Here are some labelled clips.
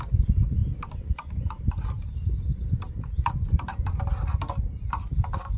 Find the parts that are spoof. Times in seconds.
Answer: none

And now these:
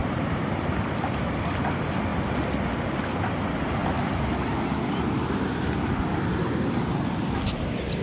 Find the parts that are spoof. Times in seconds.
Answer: 0.0-0.6 (vocoder, BigVGAN v2)